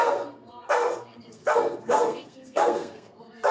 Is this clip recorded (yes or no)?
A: no